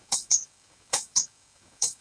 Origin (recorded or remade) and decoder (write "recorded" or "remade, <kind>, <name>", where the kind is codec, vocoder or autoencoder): remade, codec, DAC